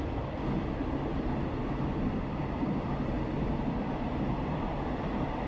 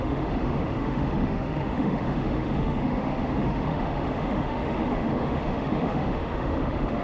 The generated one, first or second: second